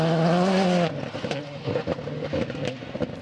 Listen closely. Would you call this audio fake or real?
real